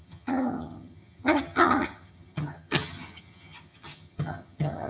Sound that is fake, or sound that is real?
fake